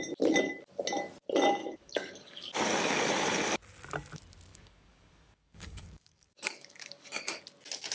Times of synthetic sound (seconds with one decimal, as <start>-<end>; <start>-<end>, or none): 1.6-2.5; 4.5-7.4